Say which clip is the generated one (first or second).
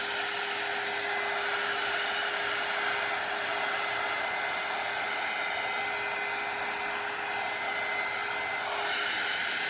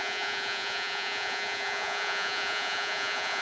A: second